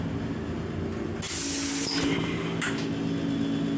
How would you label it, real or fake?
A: real